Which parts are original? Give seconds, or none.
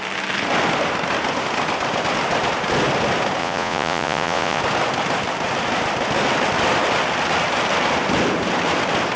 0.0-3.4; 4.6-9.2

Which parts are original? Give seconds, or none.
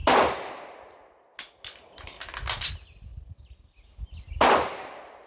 0.0-5.3